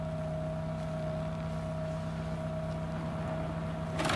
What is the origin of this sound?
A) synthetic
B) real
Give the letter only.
B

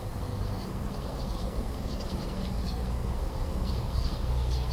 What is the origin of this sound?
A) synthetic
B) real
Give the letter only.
A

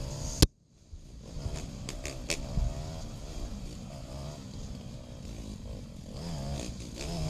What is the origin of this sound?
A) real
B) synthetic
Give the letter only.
A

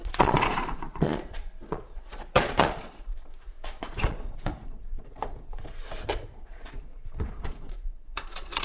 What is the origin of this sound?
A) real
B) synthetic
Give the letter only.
B